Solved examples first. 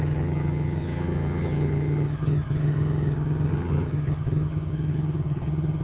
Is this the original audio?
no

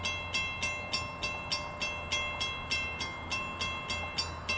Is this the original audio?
yes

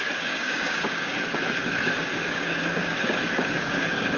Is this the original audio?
no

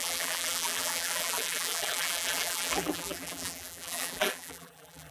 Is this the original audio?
no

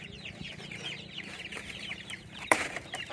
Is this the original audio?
no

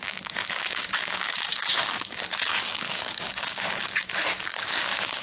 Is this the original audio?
no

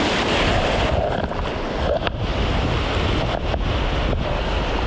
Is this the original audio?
yes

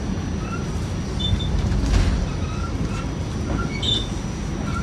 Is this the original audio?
yes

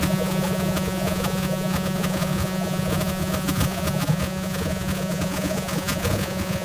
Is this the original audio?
no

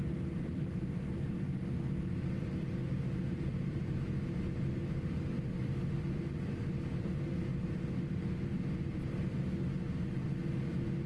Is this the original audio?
yes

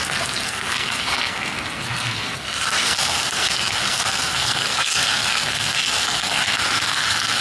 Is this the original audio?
no